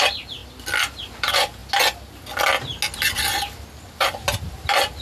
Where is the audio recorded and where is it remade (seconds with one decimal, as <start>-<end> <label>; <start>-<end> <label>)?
0.0-0.4 remade; 0.4-1.0 recorded; 1.0-1.6 remade; 1.6-4.6 recorded; 4.6-5.0 remade